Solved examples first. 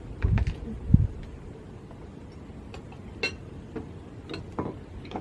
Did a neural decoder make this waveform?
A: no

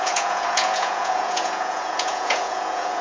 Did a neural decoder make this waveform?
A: yes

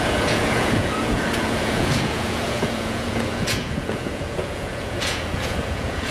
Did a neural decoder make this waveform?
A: yes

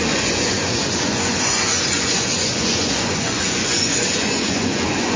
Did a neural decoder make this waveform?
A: yes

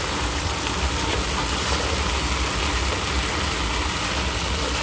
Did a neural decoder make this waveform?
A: no